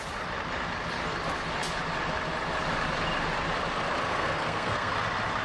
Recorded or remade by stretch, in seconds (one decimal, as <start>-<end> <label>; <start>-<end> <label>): 0.0-4.1 recorded; 4.1-4.9 remade; 4.9-5.4 recorded